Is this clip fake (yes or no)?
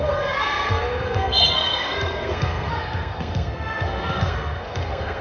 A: yes